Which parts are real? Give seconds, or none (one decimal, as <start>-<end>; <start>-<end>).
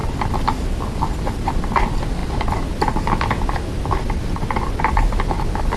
0.0-5.8